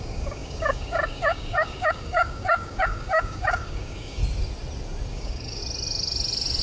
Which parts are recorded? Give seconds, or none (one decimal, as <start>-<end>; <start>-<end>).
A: 4.2-5.1; 5.6-6.6